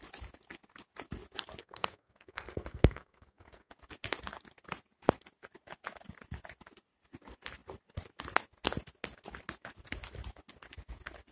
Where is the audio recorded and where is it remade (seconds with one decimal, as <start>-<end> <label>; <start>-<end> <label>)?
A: 0.0-1.6 recorded; 1.6-3.7 remade; 3.7-11.3 recorded